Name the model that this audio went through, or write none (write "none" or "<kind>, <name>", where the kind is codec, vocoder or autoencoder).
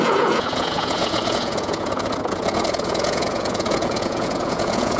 vocoder, Vocos